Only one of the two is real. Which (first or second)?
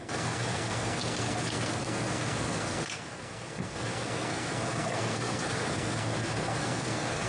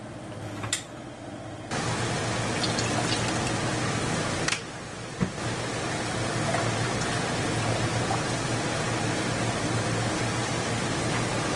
second